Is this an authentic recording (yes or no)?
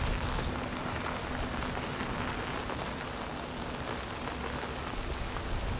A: yes